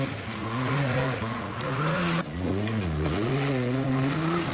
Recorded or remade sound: remade